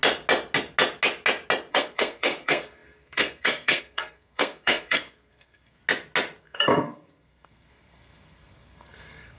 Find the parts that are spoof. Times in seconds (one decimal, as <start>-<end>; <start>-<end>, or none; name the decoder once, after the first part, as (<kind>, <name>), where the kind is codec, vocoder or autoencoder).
1.7-5.8 (codec, SNAC); 6.4-9.4